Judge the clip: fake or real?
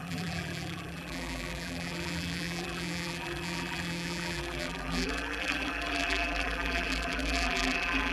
fake